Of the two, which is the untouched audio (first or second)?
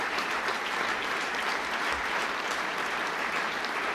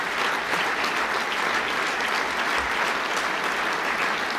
second